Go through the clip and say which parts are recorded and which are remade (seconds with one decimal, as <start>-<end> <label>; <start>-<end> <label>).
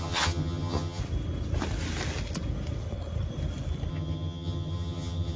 0.0-1.0 remade; 1.0-3.9 recorded; 3.9-5.4 remade